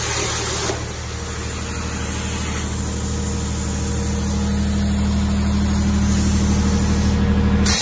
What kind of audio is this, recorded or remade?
recorded